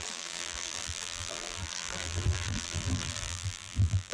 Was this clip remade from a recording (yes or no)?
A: yes